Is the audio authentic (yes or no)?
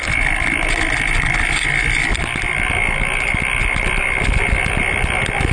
yes